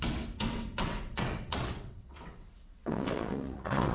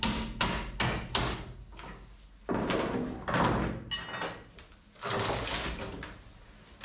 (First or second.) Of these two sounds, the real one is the second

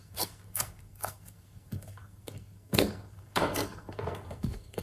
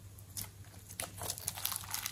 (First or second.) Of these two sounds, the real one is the second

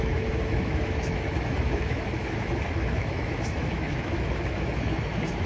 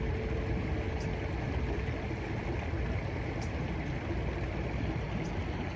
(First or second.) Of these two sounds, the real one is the second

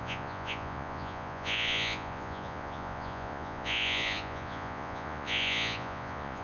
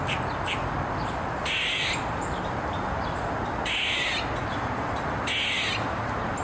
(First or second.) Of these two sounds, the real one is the second